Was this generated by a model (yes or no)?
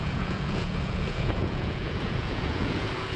yes